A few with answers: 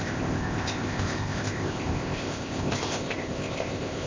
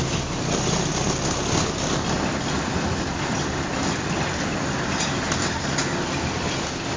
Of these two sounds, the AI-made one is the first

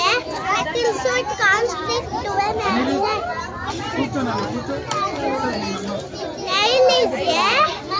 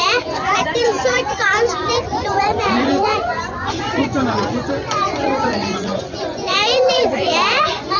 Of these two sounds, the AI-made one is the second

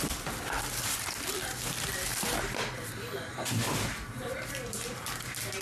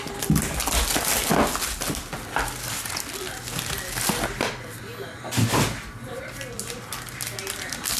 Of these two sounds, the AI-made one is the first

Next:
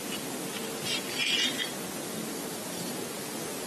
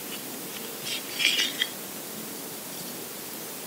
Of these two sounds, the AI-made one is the second